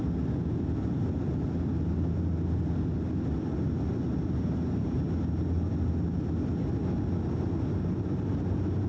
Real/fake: real